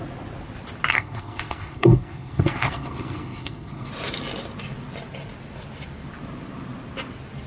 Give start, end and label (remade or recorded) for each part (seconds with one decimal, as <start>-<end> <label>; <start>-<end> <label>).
0.0-0.9 recorded; 0.9-3.9 remade; 3.9-7.5 recorded